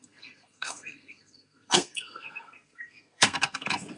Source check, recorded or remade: remade